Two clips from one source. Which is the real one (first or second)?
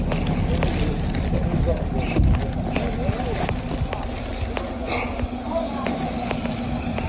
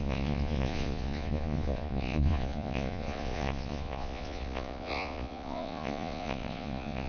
first